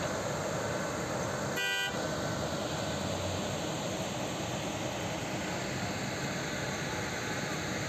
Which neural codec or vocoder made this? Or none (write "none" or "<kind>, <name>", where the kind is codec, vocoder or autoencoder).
none